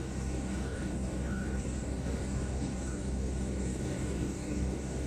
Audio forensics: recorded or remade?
remade